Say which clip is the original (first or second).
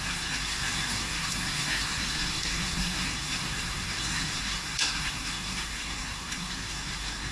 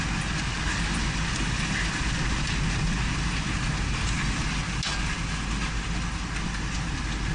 second